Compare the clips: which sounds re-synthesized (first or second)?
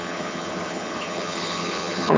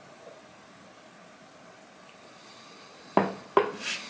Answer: first